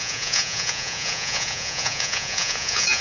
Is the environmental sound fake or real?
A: fake